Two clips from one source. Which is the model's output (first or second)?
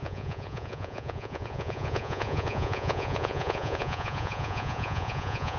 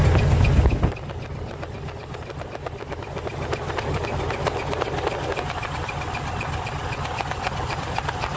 first